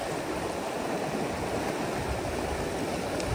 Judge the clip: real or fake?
real